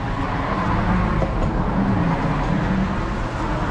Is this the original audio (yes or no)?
yes